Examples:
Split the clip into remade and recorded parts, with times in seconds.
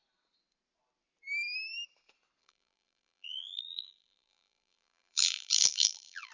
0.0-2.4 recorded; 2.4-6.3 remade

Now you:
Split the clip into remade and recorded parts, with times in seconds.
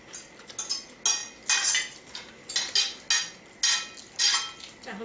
0.0-5.0 recorded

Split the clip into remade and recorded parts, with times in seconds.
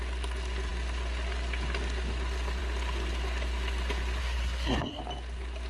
0.0-4.2 recorded; 4.2-5.0 remade; 5.0-5.7 recorded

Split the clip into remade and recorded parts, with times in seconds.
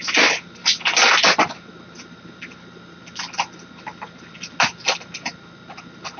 0.0-6.2 recorded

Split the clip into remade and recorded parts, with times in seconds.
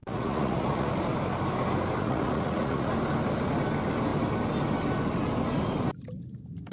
0.0-0.9 remade; 0.9-2.0 recorded; 2.0-2.9 remade; 2.9-6.7 recorded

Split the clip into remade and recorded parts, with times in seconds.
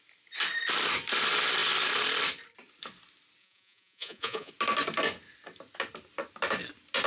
0.0-3.4 recorded; 3.4-4.5 remade; 4.5-7.1 recorded